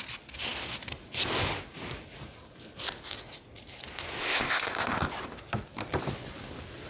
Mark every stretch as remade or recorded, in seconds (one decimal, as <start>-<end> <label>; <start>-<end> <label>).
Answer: 0.0-4.2 recorded; 4.2-5.1 remade; 5.1-6.9 recorded